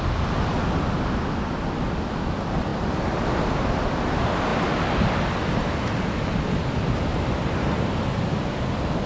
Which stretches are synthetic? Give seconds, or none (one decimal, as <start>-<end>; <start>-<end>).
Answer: 7.1-8.1